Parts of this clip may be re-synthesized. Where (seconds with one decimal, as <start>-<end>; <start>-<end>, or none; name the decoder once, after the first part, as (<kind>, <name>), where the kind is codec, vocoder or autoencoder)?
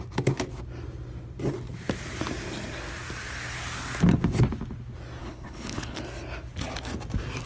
5.2-6.0 (codec, HILCodec)